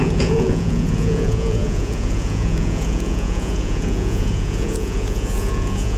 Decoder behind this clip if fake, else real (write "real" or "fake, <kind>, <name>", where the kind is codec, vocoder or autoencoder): fake, vocoder, Vocos